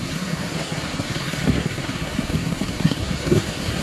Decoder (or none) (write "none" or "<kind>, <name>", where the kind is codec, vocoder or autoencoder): codec, SNAC